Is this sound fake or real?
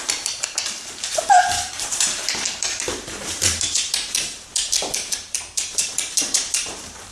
fake